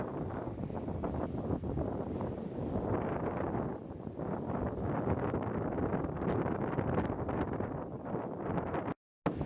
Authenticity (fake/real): real